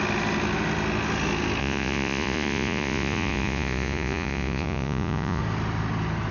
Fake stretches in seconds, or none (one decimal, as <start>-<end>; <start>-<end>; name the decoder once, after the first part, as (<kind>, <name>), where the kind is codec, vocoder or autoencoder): 1.6-5.4 (vocoder, Vocos)